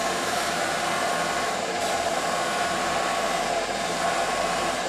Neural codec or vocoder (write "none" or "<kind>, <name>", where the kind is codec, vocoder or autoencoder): vocoder, BigVGAN v2